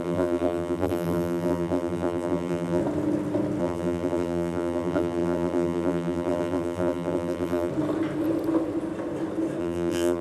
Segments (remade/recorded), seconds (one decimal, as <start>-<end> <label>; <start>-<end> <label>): 0.0-2.8 remade; 2.8-3.6 recorded; 3.6-7.7 remade; 7.7-9.6 recorded; 9.6-10.2 remade